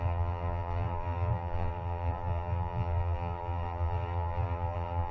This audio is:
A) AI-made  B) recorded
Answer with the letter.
A